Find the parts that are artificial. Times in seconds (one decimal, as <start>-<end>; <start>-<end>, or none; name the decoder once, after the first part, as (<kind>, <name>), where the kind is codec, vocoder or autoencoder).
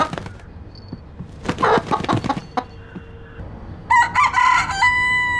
none